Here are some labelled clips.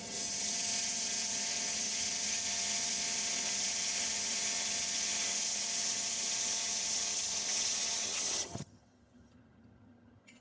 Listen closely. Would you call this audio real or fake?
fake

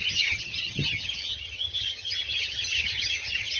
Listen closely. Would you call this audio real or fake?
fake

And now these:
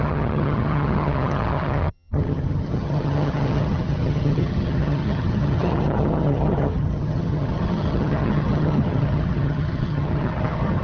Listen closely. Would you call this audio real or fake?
fake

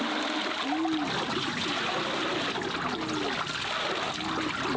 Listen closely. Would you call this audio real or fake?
real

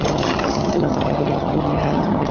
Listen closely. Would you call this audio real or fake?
fake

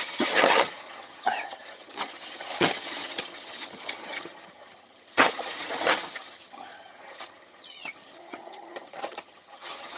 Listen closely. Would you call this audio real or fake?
fake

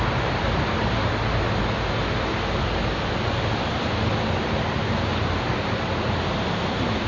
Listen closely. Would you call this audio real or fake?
real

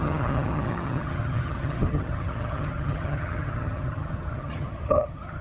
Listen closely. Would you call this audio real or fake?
fake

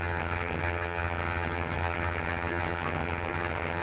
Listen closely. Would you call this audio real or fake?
fake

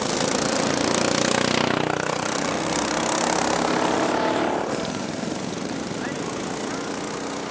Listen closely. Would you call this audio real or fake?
real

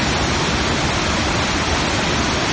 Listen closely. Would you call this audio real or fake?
real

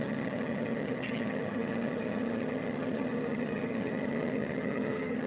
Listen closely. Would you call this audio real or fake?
fake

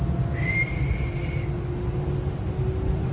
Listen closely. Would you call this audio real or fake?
real